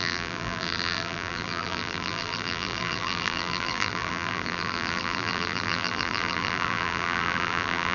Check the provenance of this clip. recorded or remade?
remade